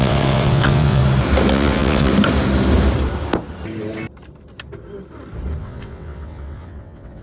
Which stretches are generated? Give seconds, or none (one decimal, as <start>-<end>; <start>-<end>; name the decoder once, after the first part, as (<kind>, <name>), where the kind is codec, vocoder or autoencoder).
0.0-1.0 (vocoder, WaveNeXt); 1.5-2.1; 5.6-7.2